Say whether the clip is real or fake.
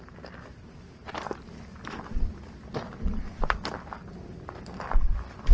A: real